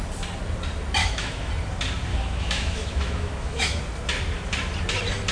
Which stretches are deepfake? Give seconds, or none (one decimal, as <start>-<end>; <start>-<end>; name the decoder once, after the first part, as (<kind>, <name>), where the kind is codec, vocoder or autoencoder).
1.0-1.5 (autoencoder, DAC-VAE); 2.1-3.8